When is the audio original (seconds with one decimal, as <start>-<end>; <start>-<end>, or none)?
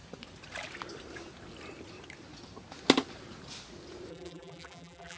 0.0-4.1